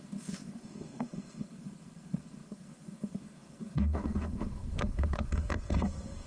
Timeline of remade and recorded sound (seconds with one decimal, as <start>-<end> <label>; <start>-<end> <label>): 0.0-6.3 remade